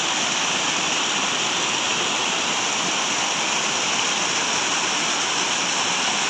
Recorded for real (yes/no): yes